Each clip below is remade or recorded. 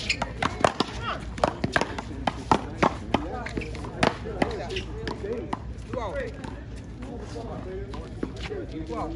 recorded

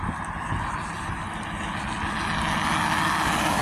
recorded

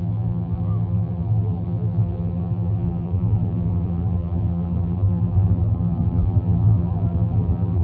remade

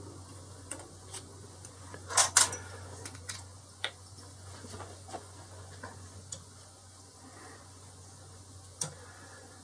remade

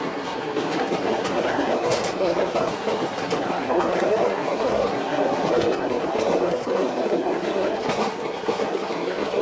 remade